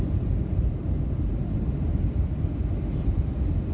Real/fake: real